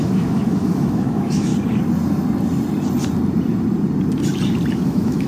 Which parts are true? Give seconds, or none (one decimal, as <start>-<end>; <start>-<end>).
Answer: 1.5-4.7